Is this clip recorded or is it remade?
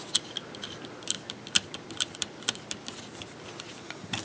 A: recorded